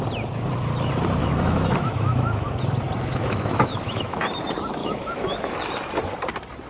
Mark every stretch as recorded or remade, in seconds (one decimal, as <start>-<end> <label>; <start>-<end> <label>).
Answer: 0.0-1.2 recorded; 1.2-2.6 remade; 2.6-3.1 recorded; 3.1-4.2 remade; 4.2-4.8 recorded; 4.8-5.5 remade; 5.5-6.7 recorded

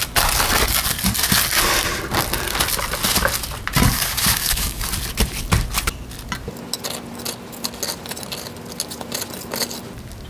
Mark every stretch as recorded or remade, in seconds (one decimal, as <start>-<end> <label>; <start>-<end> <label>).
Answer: 0.0-3.9 recorded; 3.9-4.9 remade; 4.9-10.3 recorded

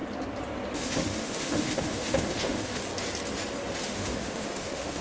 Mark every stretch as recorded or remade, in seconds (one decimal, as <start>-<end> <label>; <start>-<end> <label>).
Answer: 0.0-0.7 recorded; 0.7-2.8 remade; 2.8-3.8 recorded; 3.8-5.0 remade